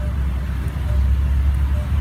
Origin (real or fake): real